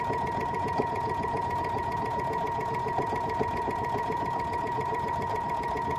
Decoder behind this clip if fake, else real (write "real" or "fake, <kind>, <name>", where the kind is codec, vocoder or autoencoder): fake, vocoder, Vocos